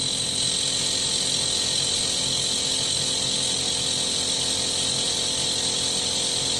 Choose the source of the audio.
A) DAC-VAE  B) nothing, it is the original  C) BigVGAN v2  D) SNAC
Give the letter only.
B